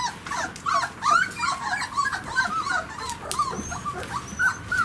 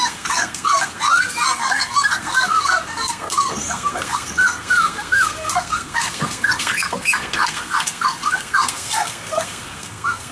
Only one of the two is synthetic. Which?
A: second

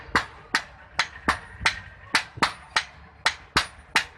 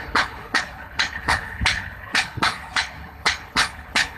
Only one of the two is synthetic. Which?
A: second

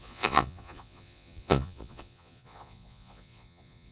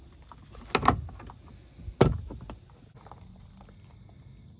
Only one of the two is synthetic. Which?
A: first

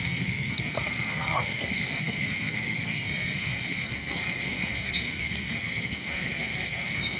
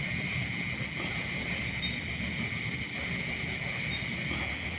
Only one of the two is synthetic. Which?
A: first